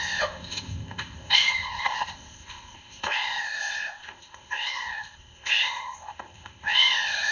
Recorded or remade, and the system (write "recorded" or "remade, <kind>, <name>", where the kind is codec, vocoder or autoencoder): remade, codec, ZipCodec